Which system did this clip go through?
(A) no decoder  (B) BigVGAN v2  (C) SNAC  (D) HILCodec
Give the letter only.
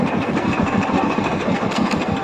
C